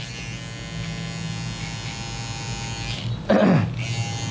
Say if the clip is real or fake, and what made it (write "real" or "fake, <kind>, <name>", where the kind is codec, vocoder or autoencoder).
real